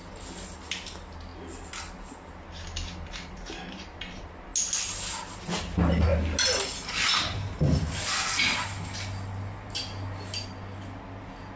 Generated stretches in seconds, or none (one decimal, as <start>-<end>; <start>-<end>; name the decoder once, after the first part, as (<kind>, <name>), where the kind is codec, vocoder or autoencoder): none